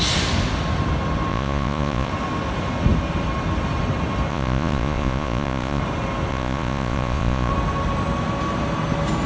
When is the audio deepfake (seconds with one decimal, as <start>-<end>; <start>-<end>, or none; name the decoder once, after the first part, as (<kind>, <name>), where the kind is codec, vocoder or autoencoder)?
1.3-2.1 (vocoder, Vocos); 4.3-5.8; 6.3-7.5